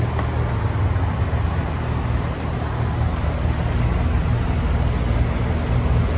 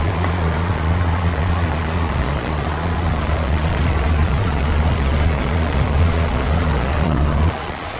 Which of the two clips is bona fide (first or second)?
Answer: first